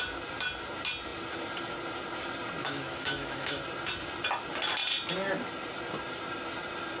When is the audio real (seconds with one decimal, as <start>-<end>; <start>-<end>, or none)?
0.0-2.6; 3.6-7.0